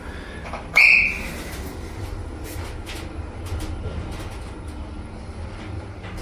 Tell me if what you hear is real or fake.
real